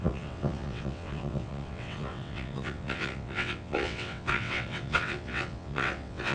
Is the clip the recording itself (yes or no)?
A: no